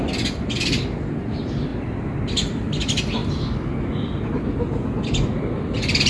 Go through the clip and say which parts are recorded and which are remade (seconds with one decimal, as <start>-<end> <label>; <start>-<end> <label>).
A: 0.0-6.1 recorded